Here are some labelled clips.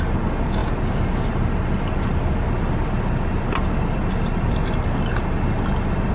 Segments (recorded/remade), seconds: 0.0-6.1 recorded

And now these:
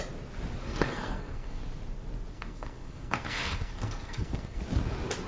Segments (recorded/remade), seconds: 0.0-0.6 recorded; 0.6-1.6 remade; 1.6-2.3 recorded; 2.3-4.6 remade; 4.6-5.3 recorded

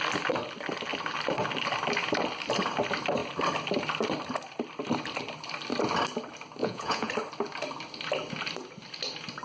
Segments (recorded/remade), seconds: 0.0-6.6 recorded; 6.6-7.1 remade; 7.1-9.4 recorded